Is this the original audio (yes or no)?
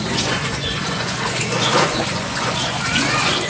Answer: no